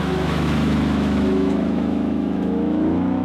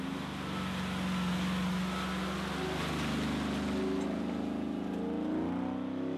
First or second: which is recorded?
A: second